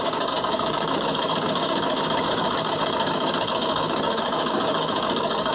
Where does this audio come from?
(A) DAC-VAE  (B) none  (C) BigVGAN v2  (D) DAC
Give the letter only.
D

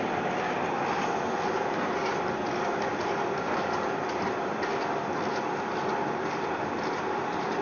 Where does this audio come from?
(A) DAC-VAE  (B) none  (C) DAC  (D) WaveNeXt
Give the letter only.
B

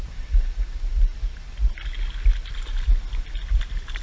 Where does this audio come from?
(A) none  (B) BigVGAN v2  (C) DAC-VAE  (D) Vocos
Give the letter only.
A